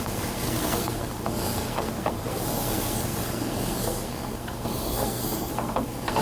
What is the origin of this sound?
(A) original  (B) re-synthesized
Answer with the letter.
B